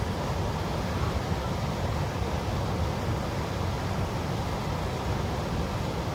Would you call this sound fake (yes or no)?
yes